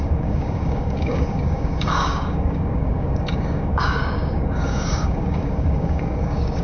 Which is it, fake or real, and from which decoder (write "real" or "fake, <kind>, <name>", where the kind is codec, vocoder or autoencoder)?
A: fake, codec, DAC